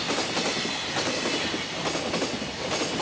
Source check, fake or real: real